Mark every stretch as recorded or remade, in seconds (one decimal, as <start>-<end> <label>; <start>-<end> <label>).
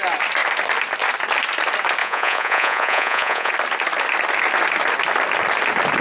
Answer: 0.0-2.0 recorded; 2.0-3.5 remade; 3.5-6.0 recorded